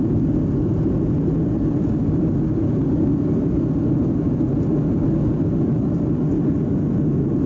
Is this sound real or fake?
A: real